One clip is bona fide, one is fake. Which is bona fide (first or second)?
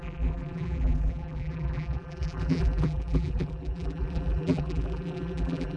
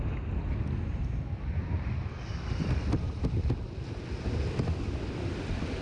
second